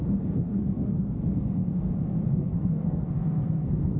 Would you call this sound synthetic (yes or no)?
yes